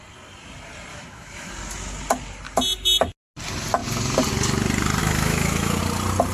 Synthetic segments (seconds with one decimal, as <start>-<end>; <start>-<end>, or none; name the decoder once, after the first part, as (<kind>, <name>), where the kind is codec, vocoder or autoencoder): 0.9-1.5 (autoencoder, DAC-VAE); 5.0-5.8